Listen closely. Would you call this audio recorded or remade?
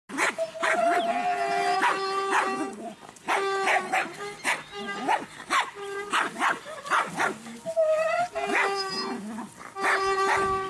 recorded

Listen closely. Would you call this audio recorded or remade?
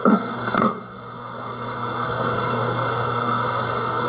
remade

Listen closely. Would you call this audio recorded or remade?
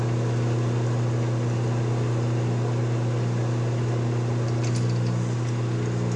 recorded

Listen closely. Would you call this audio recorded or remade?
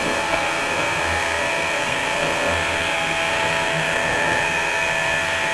remade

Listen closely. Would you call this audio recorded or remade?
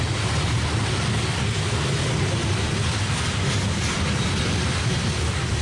recorded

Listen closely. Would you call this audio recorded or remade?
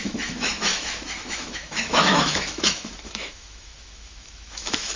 remade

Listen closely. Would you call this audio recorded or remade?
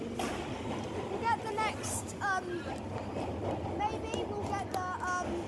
recorded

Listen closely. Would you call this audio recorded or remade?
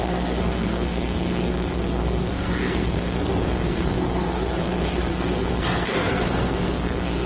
remade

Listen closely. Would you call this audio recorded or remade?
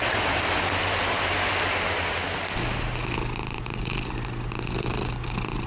recorded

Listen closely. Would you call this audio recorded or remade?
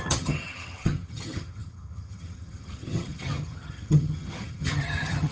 remade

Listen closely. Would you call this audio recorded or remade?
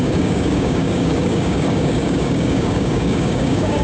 remade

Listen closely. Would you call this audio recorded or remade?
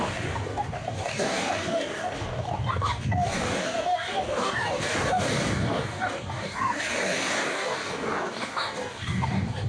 remade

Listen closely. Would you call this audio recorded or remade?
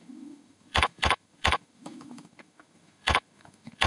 remade